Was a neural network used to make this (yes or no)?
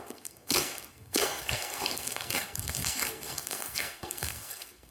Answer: yes